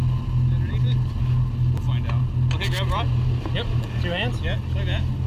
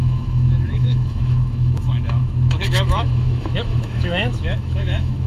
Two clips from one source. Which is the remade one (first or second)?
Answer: second